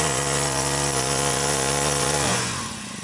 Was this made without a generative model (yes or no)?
no